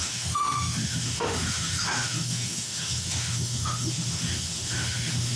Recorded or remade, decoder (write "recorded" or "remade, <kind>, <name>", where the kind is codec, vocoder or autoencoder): remade, autoencoder, DAC-VAE